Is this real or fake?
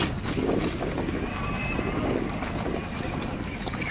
real